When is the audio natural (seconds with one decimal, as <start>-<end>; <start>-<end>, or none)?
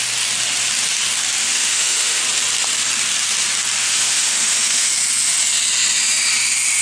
0.0-1.4; 2.2-3.8; 4.9-6.8